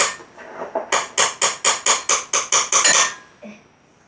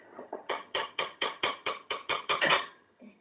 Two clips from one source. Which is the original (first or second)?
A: first